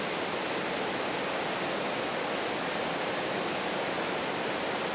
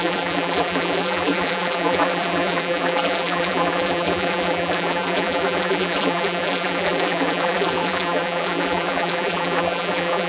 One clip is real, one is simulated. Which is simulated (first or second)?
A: second